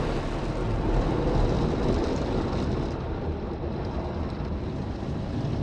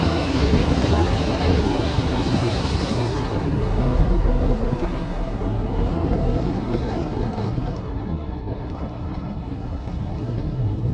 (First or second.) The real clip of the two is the first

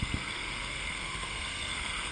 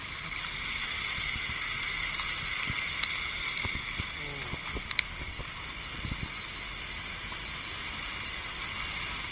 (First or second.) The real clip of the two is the second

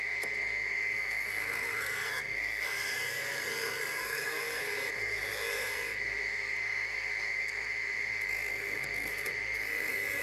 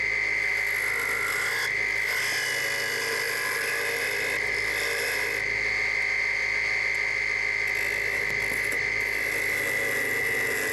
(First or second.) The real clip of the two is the second